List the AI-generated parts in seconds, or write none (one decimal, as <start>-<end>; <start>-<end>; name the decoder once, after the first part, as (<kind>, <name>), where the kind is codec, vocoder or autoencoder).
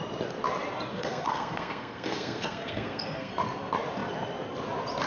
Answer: 0.9-3.3 (codec, SNAC)